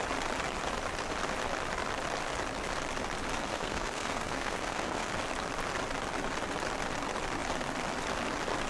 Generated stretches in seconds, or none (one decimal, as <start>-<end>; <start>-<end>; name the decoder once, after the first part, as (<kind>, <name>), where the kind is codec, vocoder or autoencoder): 3.5-5.1 (codec, SNAC)